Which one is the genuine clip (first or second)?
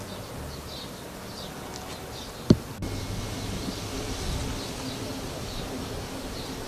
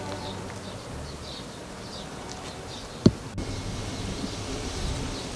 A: first